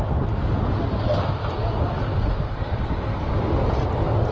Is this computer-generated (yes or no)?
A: no